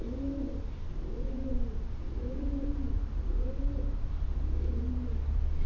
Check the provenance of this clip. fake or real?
real